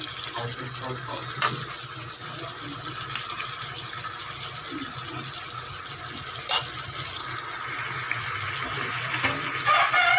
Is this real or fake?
real